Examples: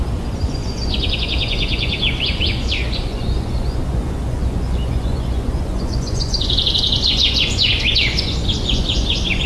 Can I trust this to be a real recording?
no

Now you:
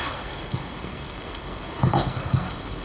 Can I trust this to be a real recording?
no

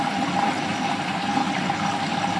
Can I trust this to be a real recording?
yes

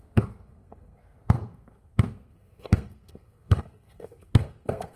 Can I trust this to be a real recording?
no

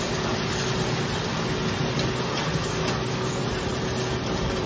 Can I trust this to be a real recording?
yes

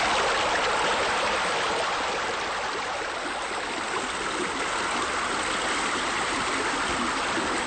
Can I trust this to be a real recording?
yes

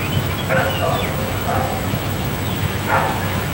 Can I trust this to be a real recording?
no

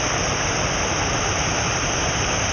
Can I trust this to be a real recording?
yes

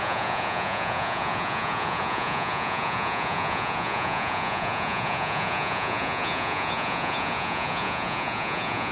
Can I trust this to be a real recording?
no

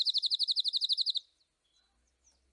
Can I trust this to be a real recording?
yes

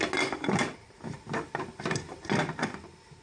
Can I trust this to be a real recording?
yes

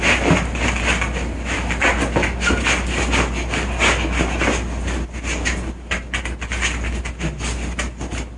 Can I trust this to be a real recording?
yes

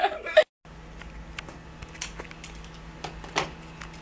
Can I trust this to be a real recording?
yes